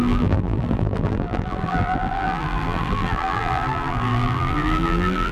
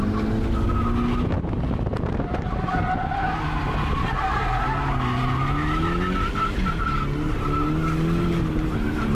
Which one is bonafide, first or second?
second